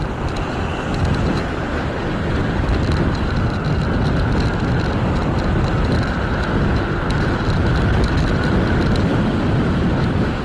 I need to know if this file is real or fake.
real